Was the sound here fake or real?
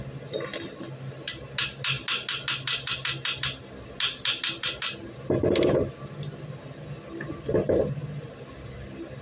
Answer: real